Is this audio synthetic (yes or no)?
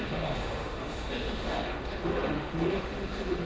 yes